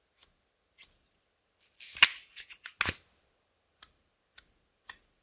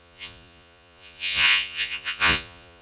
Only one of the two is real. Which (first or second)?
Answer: first